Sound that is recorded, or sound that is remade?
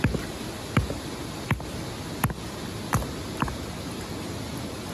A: recorded